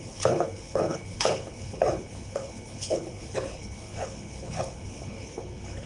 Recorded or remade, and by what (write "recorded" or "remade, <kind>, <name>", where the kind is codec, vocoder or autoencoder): remade, codec, HILCodec